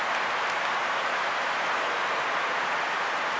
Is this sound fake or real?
real